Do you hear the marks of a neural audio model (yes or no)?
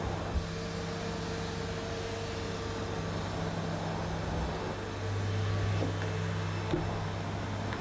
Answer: no